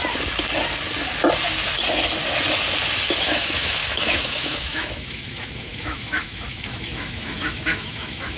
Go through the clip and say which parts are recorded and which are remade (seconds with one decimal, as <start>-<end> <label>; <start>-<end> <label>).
0.0-3.2 recorded; 3.2-8.4 remade